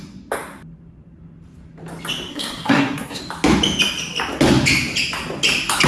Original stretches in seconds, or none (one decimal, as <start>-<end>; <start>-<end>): 0.0-2.3; 3.2-5.9